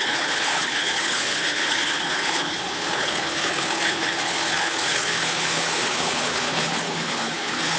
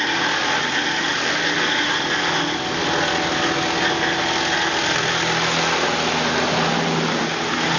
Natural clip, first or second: second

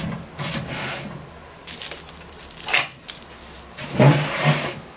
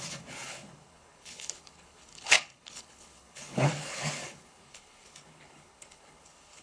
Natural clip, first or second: first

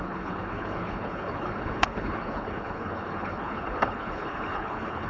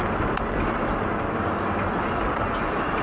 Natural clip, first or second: second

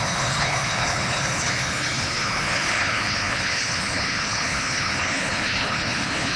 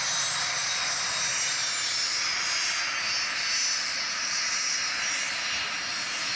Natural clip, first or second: second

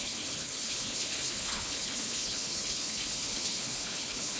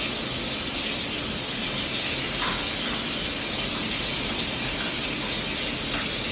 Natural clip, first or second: second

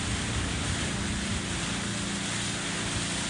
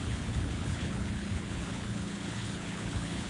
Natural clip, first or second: first